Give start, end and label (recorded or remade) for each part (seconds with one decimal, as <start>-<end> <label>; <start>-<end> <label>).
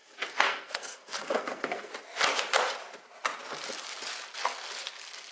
0.0-1.9 remade; 1.9-5.3 recorded